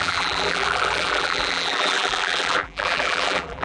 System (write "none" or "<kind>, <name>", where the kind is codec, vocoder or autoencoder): vocoder, BigVGAN v2